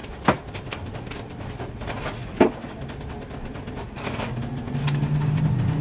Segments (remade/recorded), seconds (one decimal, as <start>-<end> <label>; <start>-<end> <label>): 0.0-5.8 recorded